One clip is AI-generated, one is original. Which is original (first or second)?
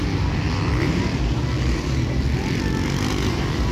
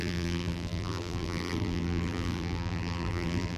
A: first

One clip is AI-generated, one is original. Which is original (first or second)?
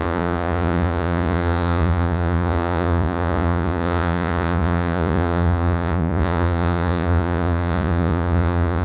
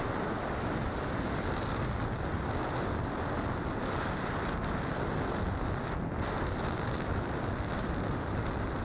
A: second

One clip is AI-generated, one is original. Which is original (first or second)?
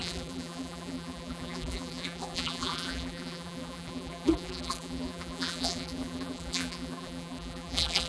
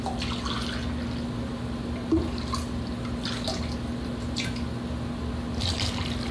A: second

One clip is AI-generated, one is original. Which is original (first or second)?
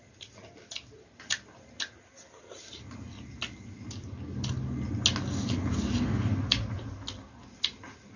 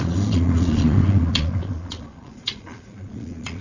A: first